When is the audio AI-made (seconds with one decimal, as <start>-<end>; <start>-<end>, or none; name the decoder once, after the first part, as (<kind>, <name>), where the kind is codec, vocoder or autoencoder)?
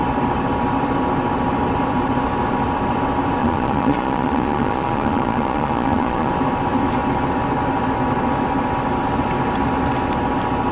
3.4-6.3 (vocoder, Vocos)